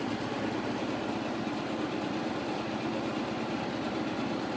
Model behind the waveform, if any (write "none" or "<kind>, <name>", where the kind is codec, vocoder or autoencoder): none